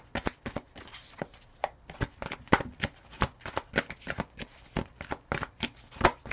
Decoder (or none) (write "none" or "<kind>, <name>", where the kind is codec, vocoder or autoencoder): none